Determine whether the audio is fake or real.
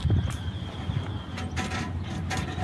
real